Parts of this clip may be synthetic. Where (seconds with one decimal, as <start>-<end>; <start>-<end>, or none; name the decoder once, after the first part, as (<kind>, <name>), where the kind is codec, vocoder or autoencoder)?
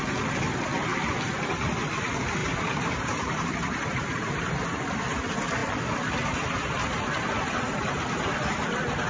2.4-4.5 (vocoder, BigVGAN v2)